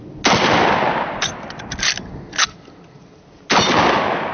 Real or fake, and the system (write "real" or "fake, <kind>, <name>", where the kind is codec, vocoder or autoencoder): real